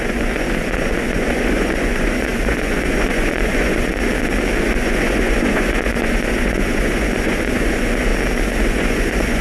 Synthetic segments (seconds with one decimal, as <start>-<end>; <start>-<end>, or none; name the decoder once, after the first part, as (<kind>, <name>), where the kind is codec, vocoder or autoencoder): 0.0-3.9 (vocoder, Vocos); 4.6-8.1; 8.6-9.4